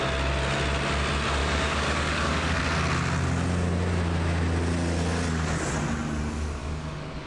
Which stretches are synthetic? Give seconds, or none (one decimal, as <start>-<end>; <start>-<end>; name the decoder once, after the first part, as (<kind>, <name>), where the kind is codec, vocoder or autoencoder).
1.4-2.6 (codec, DAC); 6.6-7.3